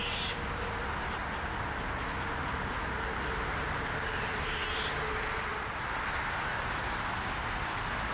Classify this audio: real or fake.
real